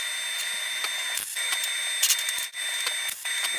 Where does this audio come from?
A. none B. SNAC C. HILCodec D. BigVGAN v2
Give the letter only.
A